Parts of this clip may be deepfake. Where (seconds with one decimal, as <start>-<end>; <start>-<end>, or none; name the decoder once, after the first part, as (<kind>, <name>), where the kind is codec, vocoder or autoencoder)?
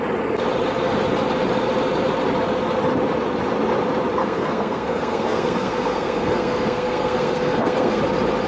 4.2-8.0 (codec, SNAC)